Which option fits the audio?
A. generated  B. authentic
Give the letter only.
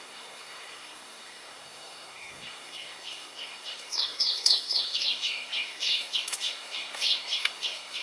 A